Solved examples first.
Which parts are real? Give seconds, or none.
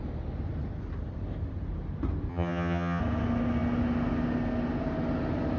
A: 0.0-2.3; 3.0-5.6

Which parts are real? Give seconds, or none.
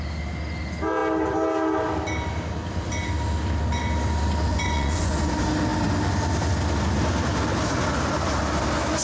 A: 0.0-4.5; 5.3-9.0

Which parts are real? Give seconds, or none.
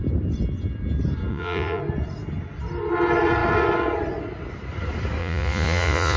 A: 0.0-1.3; 1.8-5.2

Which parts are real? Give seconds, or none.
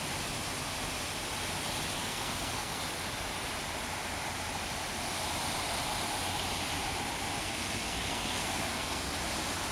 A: 0.0-2.0; 2.8-7.4; 9.1-9.7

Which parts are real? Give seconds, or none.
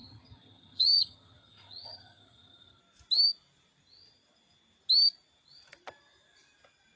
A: 2.8-7.0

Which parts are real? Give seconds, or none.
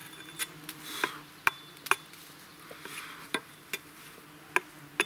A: 0.0-2.5; 4.2-5.1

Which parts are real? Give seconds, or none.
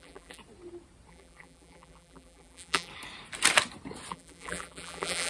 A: 0.4-1.1; 2.9-4.1